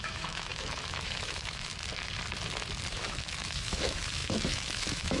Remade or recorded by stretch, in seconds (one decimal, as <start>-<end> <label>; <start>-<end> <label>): 0.0-1.7 remade; 1.7-2.9 recorded; 2.9-5.2 remade